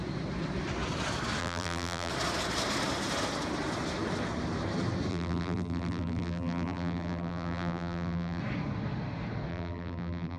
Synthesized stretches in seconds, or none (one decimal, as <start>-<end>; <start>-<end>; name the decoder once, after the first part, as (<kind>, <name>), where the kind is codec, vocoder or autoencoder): 1.4-2.1 (vocoder, BigVGAN v2); 5.1-8.4; 9.5-10.4